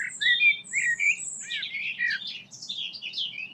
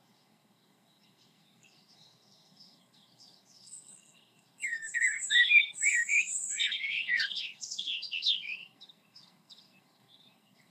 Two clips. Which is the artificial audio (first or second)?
second